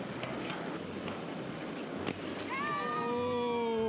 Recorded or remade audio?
recorded